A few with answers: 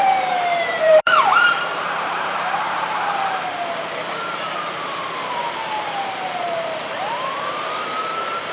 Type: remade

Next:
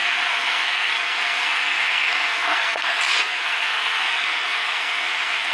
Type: remade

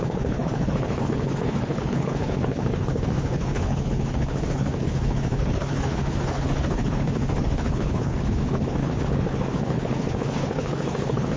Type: remade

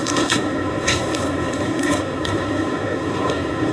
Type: remade